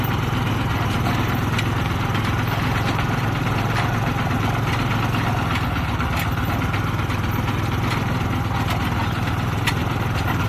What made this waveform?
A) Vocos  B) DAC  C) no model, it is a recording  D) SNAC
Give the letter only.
C